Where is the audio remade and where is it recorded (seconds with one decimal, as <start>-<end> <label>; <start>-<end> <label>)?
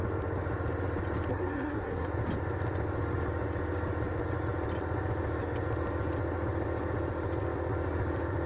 0.0-1.3 recorded; 1.3-2.1 remade; 2.1-8.5 recorded